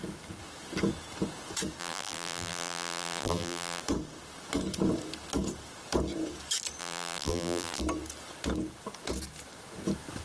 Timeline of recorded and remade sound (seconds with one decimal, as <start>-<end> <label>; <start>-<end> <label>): 0.0-1.8 recorded; 1.8-3.8 remade; 3.8-6.8 recorded; 6.8-7.8 remade; 7.8-10.2 recorded